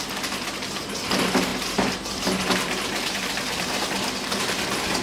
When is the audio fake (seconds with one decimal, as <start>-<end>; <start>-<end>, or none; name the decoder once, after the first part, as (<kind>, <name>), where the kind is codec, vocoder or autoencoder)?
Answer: 1.5-4.5 (vocoder, BigVGAN v2)